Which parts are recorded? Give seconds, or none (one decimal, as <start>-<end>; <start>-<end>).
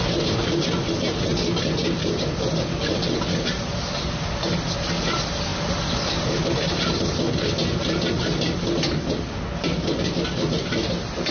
0.0-11.3